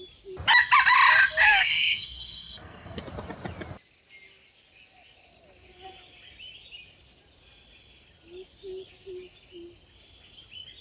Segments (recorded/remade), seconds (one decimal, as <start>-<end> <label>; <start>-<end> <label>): 0.0-1.5 recorded; 1.5-3.0 remade; 3.0-10.8 recorded